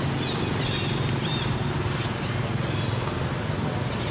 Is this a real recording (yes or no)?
yes